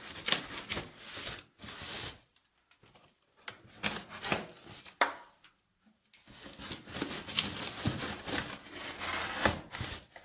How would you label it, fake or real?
real